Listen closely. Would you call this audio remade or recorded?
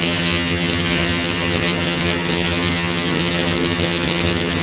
remade